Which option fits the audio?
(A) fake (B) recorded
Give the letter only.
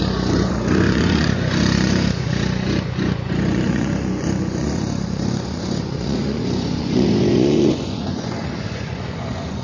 A